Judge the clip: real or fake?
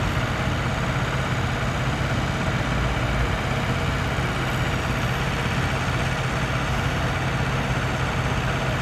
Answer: real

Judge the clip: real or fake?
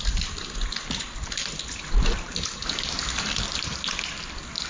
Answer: real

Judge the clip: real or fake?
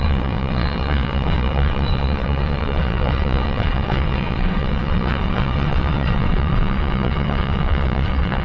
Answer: fake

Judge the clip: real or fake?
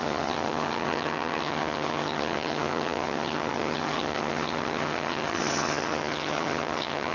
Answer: fake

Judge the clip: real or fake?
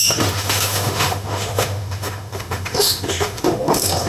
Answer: fake